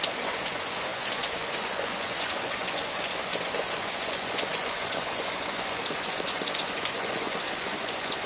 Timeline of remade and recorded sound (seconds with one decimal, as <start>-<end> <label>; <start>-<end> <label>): 0.0-8.3 remade